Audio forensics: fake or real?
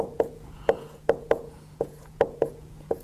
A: fake